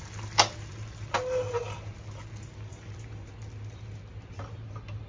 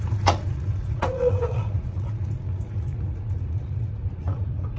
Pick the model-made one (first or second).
second